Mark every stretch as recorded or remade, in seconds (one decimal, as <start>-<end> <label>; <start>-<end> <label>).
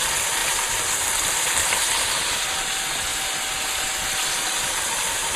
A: 0.0-0.4 recorded; 0.4-0.9 remade; 0.9-5.4 recorded